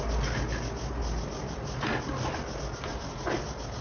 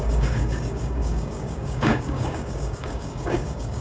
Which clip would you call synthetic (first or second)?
second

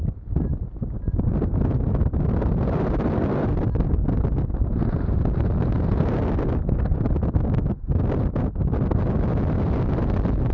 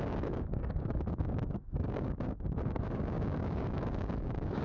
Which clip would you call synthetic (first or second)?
second